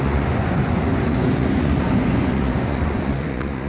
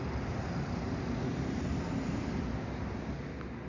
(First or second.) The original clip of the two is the second